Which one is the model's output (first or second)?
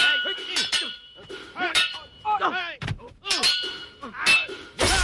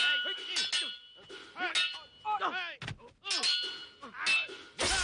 first